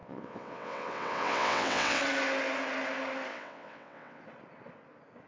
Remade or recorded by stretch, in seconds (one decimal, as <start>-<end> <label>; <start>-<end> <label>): 0.0-2.0 remade; 2.0-3.3 recorded; 3.3-4.2 remade; 4.2-5.3 recorded